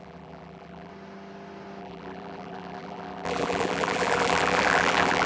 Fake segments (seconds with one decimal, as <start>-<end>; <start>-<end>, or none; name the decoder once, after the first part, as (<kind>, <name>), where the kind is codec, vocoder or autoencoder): 0.0-0.9 (vocoder, BigVGAN v2); 1.8-5.3